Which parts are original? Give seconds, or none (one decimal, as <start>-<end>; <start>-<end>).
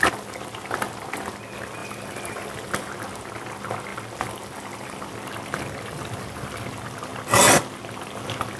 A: 0.0-1.8; 2.9-3.9; 5.1-8.6